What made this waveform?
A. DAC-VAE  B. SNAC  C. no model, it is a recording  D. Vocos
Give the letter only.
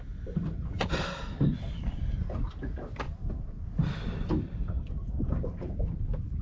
C